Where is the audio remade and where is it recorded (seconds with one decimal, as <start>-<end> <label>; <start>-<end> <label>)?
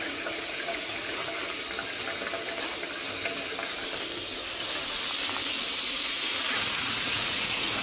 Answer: 0.0-1.2 remade; 1.2-5.9 recorded; 5.9-7.8 remade